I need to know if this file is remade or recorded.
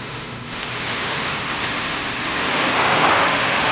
remade